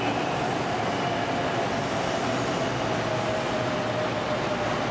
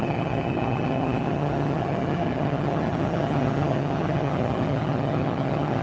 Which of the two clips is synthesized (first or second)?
second